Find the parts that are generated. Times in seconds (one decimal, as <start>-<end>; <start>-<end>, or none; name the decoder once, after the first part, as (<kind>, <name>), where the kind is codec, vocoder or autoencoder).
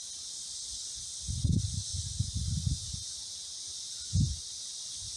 none